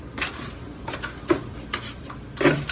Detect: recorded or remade recorded